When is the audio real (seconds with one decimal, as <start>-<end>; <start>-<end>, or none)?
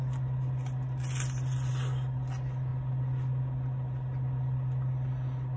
0.0-5.6